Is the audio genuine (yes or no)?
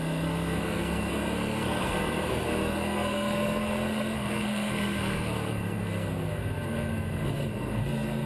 no